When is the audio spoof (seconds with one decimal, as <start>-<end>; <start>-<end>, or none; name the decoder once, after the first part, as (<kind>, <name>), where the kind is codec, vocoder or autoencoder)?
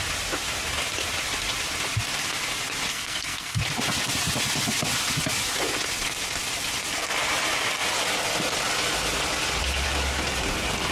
2.9-3.6 (codec, SNAC)